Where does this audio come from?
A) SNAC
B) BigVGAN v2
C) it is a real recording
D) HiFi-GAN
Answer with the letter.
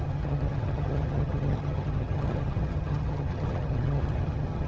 D